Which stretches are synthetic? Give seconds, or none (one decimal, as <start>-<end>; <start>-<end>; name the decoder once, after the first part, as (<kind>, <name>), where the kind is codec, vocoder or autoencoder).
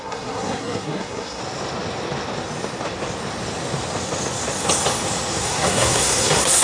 0.0-1.4 (codec, SNAC); 5.4-6.6